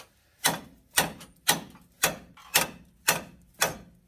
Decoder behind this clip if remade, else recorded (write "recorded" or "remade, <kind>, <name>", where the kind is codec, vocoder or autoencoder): recorded